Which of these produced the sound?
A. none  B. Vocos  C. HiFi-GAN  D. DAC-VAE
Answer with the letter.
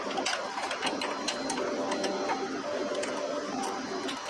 A